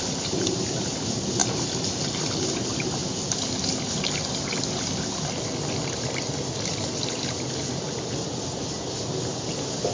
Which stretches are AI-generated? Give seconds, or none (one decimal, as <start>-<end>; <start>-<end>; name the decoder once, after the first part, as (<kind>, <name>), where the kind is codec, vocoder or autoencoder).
none